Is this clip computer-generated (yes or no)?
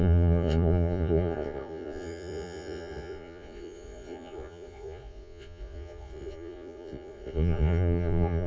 yes